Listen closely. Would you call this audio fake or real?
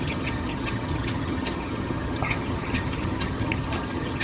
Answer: fake